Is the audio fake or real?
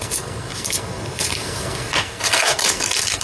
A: fake